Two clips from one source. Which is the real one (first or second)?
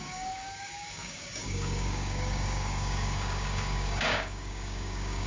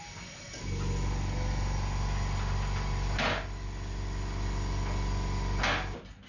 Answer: second